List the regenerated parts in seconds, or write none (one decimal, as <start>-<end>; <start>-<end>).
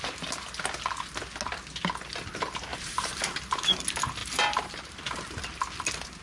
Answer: 2.7-3.7; 4.2-5.2